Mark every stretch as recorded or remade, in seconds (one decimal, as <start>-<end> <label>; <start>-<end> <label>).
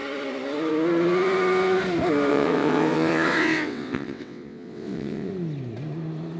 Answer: 0.0-2.3 recorded; 2.3-5.3 remade; 5.3-6.4 recorded